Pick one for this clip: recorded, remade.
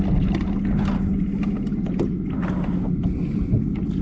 recorded